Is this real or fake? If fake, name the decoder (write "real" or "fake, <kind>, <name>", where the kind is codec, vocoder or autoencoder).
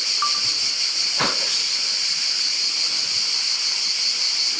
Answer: real